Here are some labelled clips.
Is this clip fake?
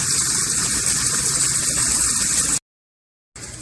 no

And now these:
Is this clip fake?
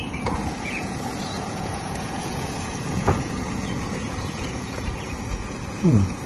yes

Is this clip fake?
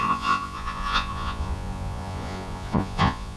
yes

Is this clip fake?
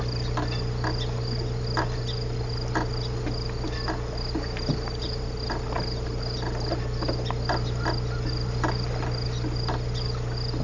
no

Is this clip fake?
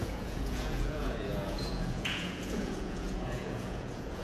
yes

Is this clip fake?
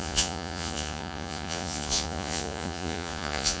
yes